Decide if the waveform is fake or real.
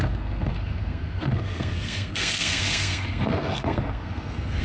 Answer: fake